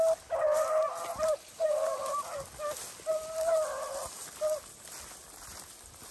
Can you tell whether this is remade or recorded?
recorded